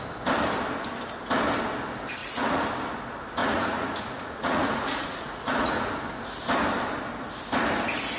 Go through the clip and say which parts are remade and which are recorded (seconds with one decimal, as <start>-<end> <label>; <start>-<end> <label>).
0.0-2.2 recorded; 2.2-2.7 remade; 2.7-3.4 recorded; 3.4-5.9 remade; 5.9-8.2 recorded